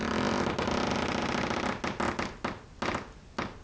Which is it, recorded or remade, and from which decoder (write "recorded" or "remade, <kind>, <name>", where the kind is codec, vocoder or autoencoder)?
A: recorded